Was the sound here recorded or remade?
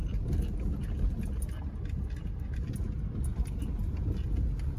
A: recorded